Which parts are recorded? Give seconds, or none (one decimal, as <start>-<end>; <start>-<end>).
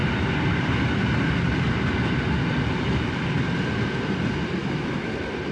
0.0-4.6; 5.1-5.5